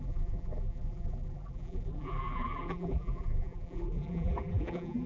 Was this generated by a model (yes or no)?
yes